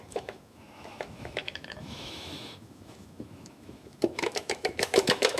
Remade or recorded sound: remade